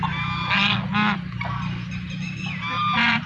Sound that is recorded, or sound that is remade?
recorded